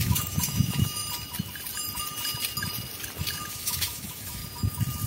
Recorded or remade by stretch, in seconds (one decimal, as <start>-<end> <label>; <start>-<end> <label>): 0.0-1.0 remade; 1.0-3.5 recorded; 3.5-4.4 remade; 4.4-5.1 recorded